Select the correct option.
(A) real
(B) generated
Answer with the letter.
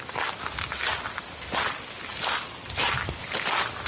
A